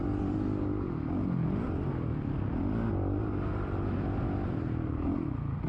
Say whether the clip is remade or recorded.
recorded